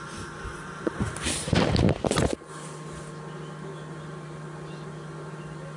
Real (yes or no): yes